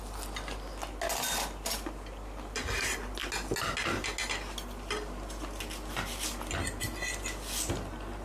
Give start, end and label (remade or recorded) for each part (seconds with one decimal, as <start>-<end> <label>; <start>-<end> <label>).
0.0-8.2 recorded